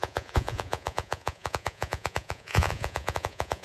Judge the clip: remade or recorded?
remade